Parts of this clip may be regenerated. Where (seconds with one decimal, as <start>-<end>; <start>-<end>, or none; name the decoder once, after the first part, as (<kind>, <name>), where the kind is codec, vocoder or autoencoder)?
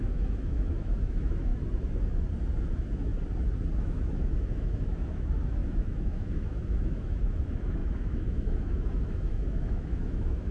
0.0-1.5 (autoencoder, DAC-VAE); 2.7-3.1; 3.8-10.5